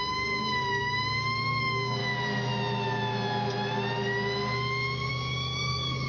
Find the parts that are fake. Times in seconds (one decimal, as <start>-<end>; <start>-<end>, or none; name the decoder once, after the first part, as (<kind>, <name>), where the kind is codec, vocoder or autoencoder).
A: 0.0-2.0 (codec, DAC); 5.1-6.1